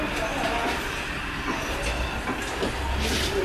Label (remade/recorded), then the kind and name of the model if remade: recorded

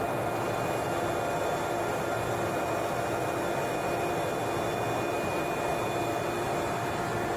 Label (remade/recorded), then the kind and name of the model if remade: recorded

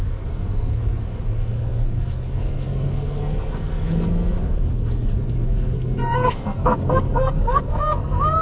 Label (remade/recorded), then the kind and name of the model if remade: remade, codec, SNAC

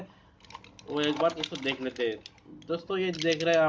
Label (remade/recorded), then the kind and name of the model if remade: recorded